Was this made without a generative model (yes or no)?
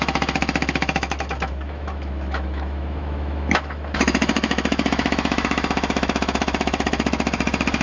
no